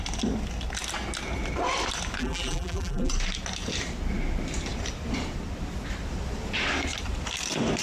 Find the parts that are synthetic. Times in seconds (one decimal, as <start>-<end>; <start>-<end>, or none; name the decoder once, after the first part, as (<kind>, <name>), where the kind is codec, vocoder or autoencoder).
2.2-3.1 (vocoder, BigVGAN v2)